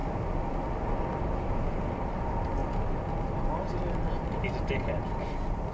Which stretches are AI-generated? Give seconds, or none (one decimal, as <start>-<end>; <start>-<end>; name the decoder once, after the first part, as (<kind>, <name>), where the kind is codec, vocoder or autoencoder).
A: none